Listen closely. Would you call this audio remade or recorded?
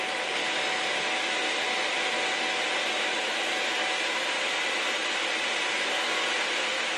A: recorded